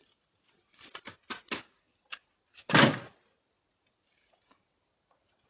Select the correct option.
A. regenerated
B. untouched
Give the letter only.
B